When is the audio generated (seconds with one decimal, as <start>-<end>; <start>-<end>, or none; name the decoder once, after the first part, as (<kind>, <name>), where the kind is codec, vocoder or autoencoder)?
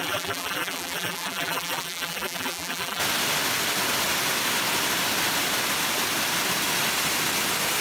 0.0-3.0 (vocoder, BigVGAN v2)